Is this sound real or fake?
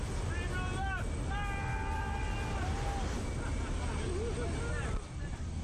real